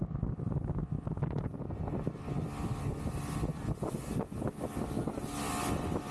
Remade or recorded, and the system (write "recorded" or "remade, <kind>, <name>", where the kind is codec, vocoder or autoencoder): recorded